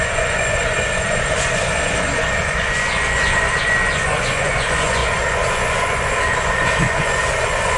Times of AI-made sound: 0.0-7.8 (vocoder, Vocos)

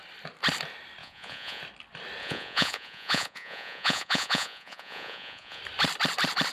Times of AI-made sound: 1.0-1.6 (vocoder, Vocos); 2.2-5.6

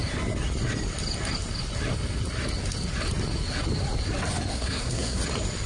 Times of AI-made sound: 4.5-5.2 (codec, SNAC)